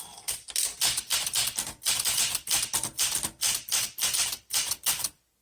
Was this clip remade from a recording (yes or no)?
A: yes